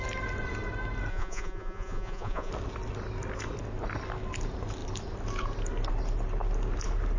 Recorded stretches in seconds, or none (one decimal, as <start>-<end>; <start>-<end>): 0.0-1.1; 2.5-7.2